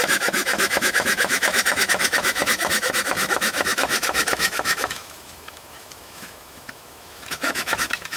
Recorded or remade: remade